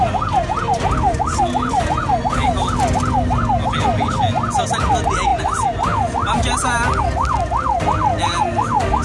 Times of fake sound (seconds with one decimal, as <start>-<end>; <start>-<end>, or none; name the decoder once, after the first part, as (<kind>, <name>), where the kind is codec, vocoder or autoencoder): none